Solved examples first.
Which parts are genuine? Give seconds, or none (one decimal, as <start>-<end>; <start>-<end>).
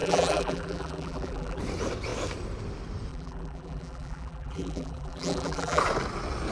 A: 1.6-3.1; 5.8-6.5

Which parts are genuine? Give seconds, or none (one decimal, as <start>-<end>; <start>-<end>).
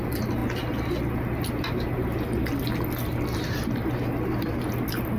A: 0.0-5.2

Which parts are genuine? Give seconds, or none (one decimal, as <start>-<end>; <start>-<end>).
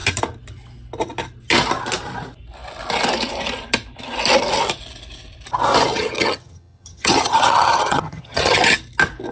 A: 0.0-5.9; 8.6-9.3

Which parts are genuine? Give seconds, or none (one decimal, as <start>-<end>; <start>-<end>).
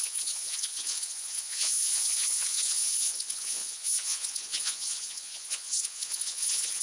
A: none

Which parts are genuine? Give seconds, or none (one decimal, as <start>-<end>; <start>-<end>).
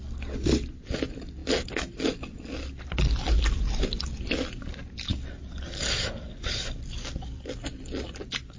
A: 0.0-8.6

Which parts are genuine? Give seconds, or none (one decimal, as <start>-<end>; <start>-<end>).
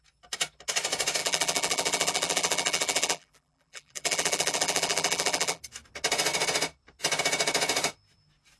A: 0.0-1.2; 5.6-8.6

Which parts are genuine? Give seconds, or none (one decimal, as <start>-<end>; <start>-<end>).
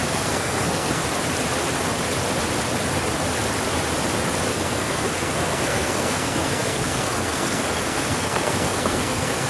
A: 1.0-4.5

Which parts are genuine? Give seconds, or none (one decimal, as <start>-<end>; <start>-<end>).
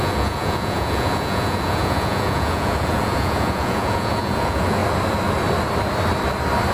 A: 4.8-6.7